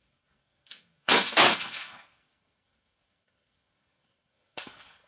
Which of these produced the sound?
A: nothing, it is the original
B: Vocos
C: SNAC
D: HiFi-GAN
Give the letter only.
C